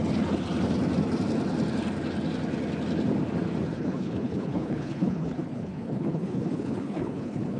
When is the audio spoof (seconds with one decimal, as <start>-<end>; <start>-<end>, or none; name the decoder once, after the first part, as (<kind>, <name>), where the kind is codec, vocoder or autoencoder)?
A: 3.7-7.6 (codec, HILCodec)